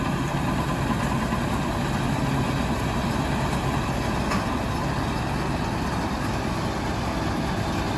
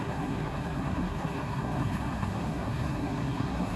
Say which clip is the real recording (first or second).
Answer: first